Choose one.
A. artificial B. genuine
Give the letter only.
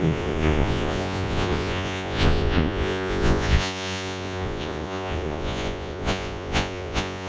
A